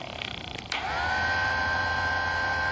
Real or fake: fake